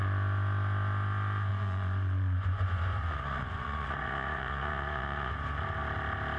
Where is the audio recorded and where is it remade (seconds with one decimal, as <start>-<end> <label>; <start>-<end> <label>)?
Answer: 0.0-1.5 recorded; 1.5-5.3 remade; 5.3-6.4 recorded